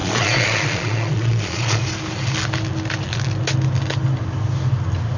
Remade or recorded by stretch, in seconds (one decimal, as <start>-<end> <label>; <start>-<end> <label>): 0.0-1.8 remade; 1.8-5.2 recorded